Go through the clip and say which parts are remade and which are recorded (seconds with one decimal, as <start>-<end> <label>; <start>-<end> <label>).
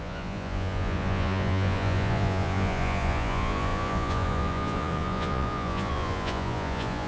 0.0-7.1 remade